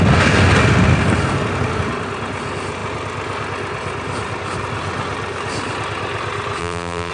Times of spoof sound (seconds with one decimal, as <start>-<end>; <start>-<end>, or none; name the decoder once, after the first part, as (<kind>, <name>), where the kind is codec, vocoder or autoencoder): 6.6-7.1 (vocoder, BigVGAN v2)

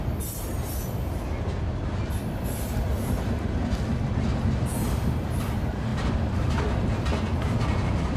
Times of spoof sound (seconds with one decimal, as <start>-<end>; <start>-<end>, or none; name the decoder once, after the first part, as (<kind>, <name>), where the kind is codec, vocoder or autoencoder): 4.7-5.5 (vocoder, BigVGAN v2); 5.9-6.5

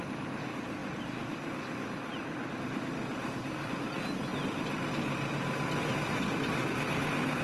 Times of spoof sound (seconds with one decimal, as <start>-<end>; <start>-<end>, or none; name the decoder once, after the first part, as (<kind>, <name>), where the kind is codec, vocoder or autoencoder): 0.8-2.1 (vocoder, BigVGAN v2); 3.2-3.7